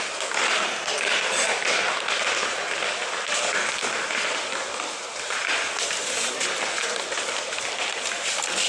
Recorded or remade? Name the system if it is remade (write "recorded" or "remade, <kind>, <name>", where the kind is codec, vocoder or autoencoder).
recorded